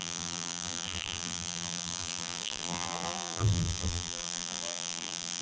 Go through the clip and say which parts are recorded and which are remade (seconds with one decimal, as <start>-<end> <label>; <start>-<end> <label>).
0.0-5.4 remade